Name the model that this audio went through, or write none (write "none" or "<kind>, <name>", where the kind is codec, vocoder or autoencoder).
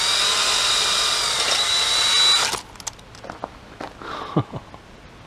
none